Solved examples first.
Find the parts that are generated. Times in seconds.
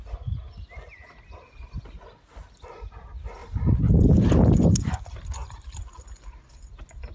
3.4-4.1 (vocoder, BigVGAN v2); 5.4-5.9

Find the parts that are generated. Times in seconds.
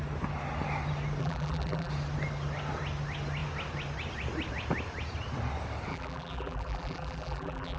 1.2-1.9 (vocoder, BigVGAN v2); 5.9-7.8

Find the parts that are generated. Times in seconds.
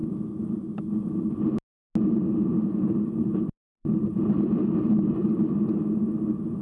2.5-5.8 (vocoder, BigVGAN v2)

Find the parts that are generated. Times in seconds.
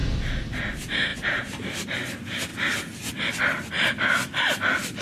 1.1-1.6 (vocoder, BigVGAN v2)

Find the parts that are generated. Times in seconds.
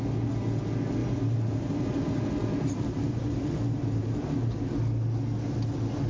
1.0-4.7 (vocoder, BigVGAN v2)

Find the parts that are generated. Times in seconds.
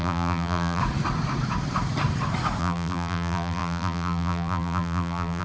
0.0-0.8 (vocoder, BigVGAN v2); 2.6-5.4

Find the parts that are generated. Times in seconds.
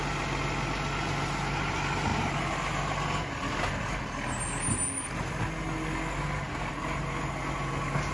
none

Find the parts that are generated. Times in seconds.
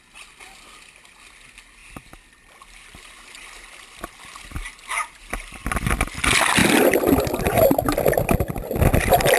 1.8-5.6 (vocoder, BigVGAN v2)